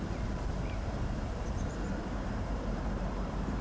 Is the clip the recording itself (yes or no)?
no